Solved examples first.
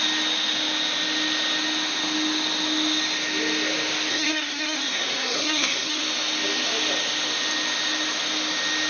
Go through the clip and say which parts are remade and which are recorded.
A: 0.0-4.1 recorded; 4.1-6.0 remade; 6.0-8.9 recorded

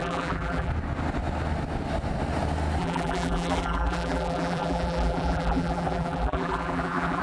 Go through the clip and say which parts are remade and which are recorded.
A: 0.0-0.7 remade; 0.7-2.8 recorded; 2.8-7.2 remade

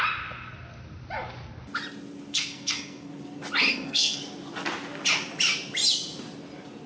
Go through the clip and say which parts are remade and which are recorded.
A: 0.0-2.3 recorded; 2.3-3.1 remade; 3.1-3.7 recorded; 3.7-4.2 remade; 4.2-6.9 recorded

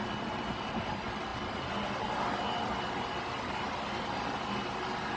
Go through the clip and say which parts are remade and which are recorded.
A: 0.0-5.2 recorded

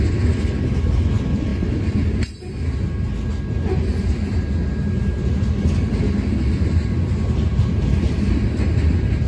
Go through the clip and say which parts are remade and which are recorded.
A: 0.0-9.3 recorded

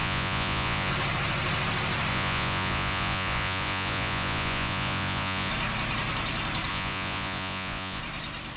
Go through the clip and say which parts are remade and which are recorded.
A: 0.0-0.9 remade; 0.9-2.1 recorded; 2.1-5.5 remade; 5.5-6.7 recorded; 6.7-8.0 remade; 8.0-8.6 recorded